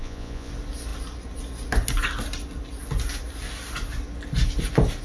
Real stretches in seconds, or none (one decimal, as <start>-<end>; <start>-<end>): 0.5-5.0